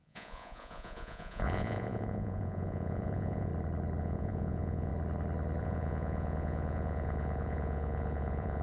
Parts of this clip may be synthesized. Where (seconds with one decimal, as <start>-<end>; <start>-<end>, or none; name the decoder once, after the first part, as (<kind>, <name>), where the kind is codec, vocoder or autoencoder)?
0.0-3.5 (vocoder, Vocos); 4.0-4.9; 5.6-8.6